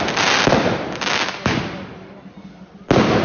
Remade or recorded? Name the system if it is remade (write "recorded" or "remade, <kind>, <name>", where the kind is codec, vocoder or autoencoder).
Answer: recorded